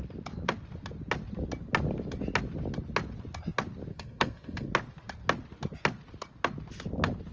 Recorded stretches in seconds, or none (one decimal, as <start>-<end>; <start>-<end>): 0.0-3.9; 4.7-7.3